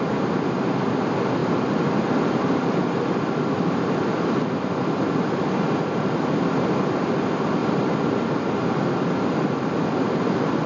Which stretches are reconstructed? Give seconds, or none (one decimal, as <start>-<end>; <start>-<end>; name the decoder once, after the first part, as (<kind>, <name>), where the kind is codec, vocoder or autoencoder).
none